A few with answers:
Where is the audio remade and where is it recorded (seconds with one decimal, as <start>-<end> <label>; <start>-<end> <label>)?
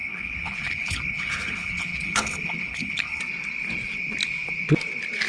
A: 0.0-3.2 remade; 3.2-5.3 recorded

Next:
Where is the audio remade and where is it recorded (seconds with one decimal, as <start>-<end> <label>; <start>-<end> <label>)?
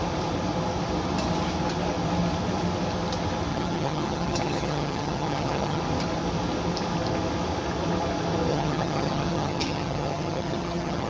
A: 0.0-3.5 recorded; 3.5-5.8 remade; 5.8-8.5 recorded; 8.5-11.1 remade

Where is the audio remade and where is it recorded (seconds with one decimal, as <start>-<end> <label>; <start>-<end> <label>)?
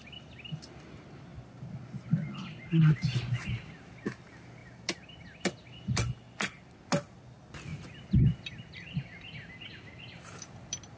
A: 0.0-11.0 recorded